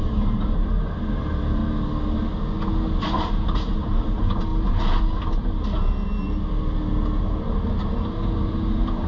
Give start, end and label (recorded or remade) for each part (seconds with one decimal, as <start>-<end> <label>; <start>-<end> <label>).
0.0-1.6 remade; 1.6-3.0 recorded; 3.0-4.5 remade; 4.5-7.9 recorded; 7.9-9.1 remade